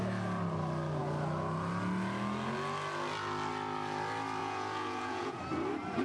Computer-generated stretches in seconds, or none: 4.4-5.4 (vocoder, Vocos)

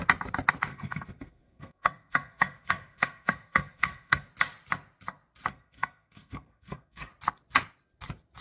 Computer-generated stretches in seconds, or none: 0.7-4.3 (codec, SNAC); 5.5-7.1

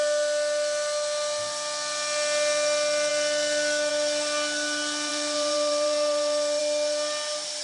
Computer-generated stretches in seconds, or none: 5.1-6.6 (vocoder, BigVGAN v2)

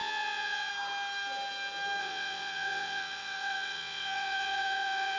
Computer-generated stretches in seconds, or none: 0.0-0.7 (vocoder, WaveNeXt); 2.0-5.2